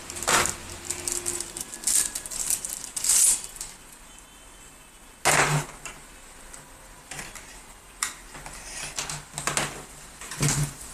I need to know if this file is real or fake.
real